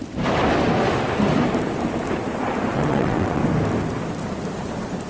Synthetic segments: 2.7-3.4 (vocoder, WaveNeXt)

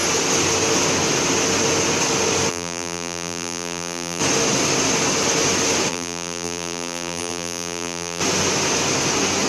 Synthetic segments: 2.5-4.2 (vocoder, BigVGAN v2); 5.9-8.2

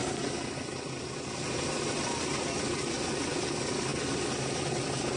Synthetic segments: none

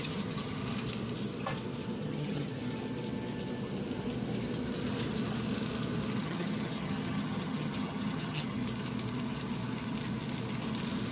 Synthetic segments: 0.0-0.6 (vocoder, HiFi-GAN); 2.0-2.6; 6.2-8.6

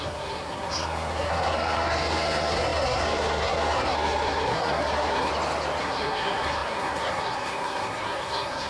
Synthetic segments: 0.0-5.3 (codec, SNAC); 5.8-8.7

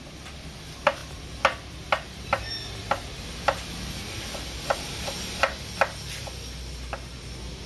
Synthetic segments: none

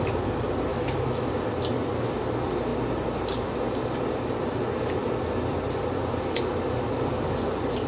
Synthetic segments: 0.7-1.3 (autoencoder, DAC-VAE)

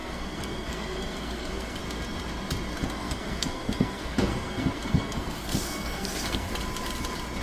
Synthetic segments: 0.0-1.8 (codec, SNAC); 2.8-6.5